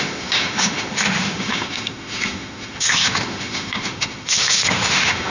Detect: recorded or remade remade